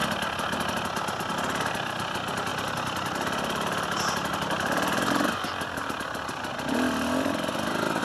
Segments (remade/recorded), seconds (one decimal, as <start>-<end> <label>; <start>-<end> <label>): 0.0-1.3 recorded; 1.3-8.0 remade